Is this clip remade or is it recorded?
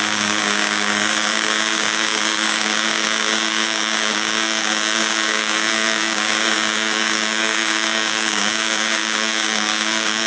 remade